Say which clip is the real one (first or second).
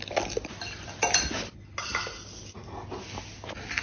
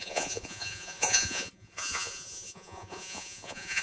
first